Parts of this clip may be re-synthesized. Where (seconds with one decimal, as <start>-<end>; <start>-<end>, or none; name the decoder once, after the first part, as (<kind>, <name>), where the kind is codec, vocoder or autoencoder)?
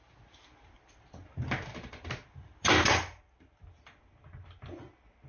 none